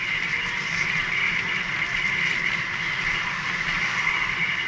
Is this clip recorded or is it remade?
recorded